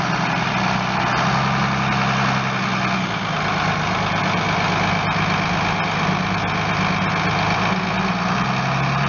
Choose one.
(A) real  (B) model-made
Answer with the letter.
A